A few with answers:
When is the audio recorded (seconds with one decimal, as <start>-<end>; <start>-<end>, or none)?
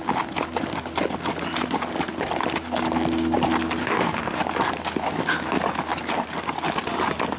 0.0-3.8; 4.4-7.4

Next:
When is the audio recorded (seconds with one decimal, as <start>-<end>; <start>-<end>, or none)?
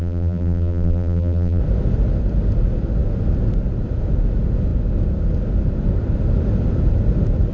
1.6-7.5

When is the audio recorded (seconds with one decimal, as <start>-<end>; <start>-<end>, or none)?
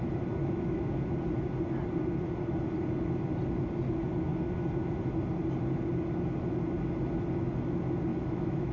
0.0-0.4; 0.9-8.1